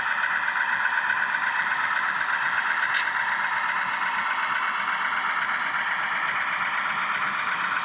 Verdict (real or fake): real